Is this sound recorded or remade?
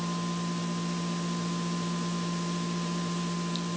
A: remade